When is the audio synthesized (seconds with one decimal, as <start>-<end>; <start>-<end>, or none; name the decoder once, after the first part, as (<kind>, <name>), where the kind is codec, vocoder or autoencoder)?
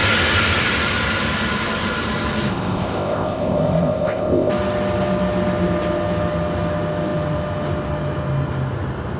2.5-4.5 (codec, ZipCodec)